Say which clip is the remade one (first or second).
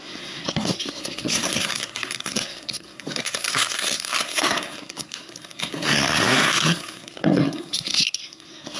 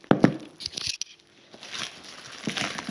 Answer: first